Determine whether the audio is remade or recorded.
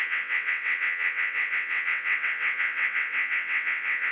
remade